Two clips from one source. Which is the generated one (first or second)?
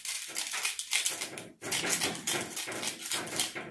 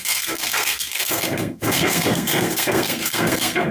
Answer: second